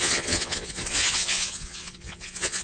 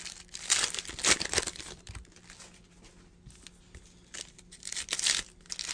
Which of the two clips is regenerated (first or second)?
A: first